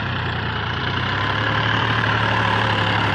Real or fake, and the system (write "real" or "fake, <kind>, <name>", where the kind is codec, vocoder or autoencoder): fake, vocoder, BigVGAN v2